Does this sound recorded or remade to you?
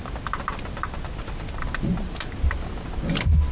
recorded